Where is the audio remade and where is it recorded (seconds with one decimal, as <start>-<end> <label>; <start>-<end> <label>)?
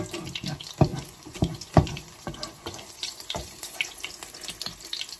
0.0-0.9 recorded; 0.9-4.0 remade; 4.0-5.2 recorded